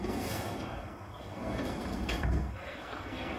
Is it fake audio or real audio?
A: fake